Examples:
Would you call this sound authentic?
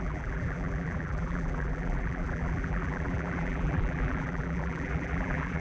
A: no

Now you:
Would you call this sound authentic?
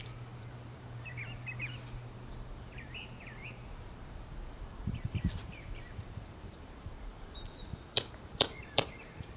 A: no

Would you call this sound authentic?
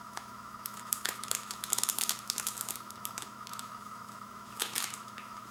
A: no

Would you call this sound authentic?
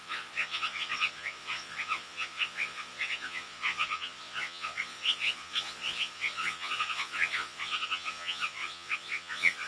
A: no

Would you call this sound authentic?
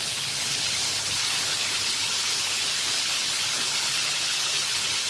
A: no